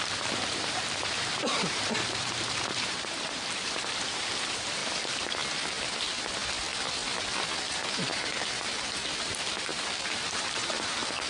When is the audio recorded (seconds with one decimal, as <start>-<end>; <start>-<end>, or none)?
4.8-7.5